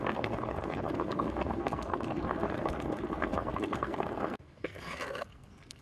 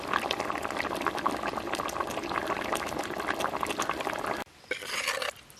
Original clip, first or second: second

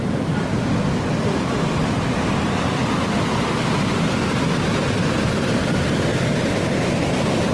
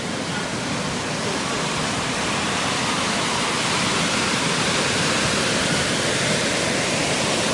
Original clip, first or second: first